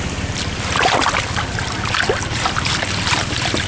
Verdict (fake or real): fake